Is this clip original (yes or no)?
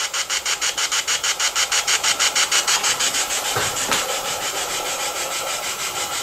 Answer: no